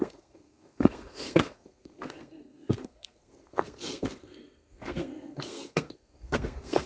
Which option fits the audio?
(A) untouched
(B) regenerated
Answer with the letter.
B